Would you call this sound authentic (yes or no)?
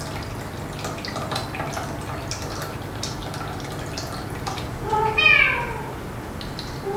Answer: yes